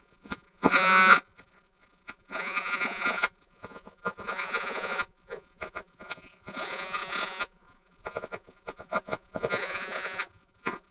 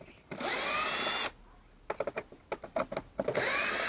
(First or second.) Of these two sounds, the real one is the second